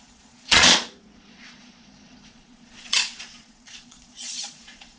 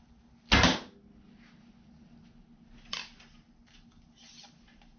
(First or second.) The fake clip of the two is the first